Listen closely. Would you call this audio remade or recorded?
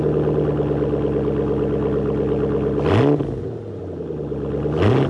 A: recorded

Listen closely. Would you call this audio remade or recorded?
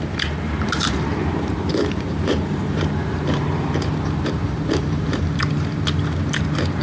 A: remade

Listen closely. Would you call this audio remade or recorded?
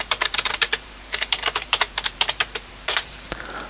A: remade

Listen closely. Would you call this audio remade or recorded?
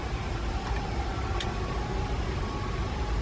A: recorded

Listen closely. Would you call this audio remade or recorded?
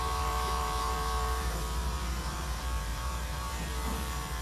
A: remade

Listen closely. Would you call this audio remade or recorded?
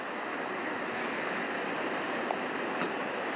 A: recorded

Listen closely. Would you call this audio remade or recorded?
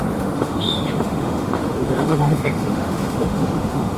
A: remade